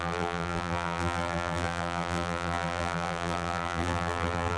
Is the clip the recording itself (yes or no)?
no